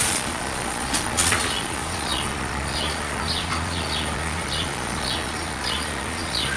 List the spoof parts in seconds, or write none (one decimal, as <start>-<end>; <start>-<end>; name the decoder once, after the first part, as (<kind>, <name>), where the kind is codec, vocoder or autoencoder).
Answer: 0.0-6.6 (vocoder, Vocos)